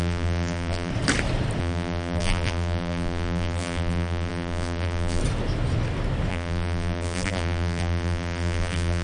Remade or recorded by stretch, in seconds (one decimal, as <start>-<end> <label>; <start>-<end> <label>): 0.0-0.9 remade; 0.9-1.6 recorded; 1.6-5.2 remade; 5.2-6.3 recorded; 6.3-9.0 remade